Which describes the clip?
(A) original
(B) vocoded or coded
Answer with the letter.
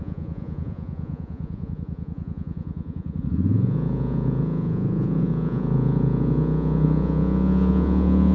B